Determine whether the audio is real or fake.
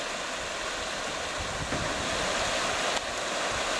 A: real